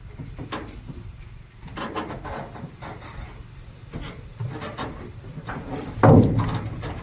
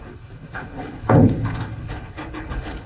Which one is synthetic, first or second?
second